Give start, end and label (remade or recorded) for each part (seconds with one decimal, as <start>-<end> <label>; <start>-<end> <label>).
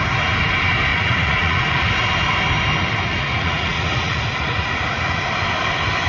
0.0-0.9 recorded; 0.9-1.9 remade; 1.9-3.1 recorded; 3.1-5.3 remade; 5.3-6.1 recorded